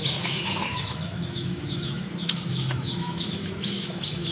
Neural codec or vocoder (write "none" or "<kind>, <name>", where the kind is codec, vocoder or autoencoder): autoencoder, DAC-VAE